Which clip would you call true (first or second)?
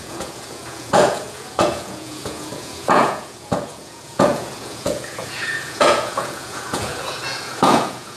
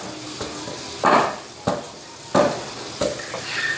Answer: second